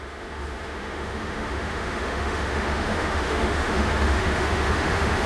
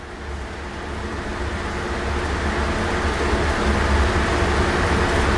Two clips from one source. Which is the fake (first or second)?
first